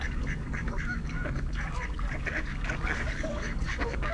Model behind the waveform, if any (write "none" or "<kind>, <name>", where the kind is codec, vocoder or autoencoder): codec, DAC